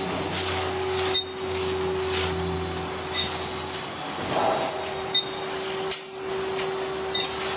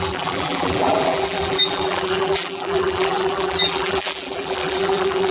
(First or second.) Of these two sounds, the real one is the first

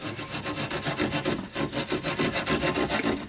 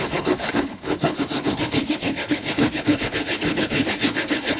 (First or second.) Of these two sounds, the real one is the first